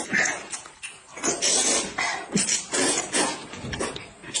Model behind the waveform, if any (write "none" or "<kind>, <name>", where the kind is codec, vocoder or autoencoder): none